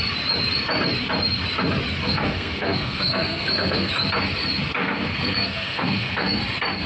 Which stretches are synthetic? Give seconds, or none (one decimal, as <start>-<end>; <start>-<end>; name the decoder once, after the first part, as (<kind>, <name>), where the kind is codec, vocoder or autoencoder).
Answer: 2.0-3.9 (codec, SNAC); 4.8-6.4

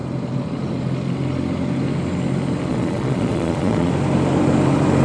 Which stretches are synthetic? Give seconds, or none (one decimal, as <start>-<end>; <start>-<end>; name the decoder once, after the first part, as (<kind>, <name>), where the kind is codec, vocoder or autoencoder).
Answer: 2.7-3.9 (vocoder, Vocos)